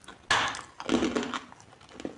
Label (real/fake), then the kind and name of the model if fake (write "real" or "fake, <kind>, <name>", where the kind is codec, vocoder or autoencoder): real